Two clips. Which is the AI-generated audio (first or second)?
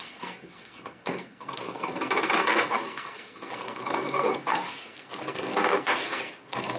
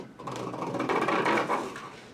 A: first